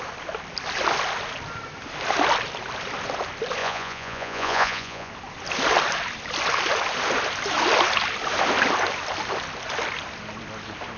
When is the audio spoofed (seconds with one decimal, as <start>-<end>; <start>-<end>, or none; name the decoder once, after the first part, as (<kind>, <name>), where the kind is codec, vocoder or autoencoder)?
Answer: 3.6-5.1 (vocoder, Vocos)